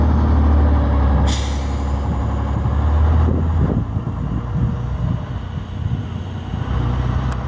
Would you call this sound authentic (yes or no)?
yes